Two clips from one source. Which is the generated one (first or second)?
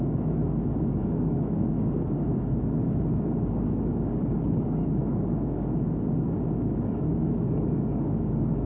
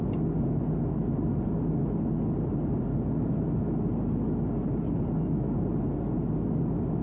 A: first